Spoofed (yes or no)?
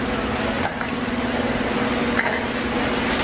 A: no